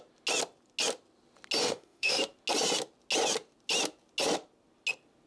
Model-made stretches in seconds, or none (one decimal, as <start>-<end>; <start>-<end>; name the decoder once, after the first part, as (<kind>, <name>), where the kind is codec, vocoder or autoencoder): 1.6-2.2 (autoencoder, DAC-VAE)